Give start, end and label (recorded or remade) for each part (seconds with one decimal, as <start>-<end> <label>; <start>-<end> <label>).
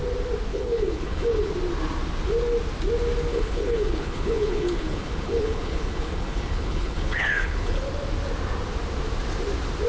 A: 0.0-0.5 recorded; 0.5-1.5 remade; 1.5-3.3 recorded; 3.3-7.8 remade; 7.8-9.9 recorded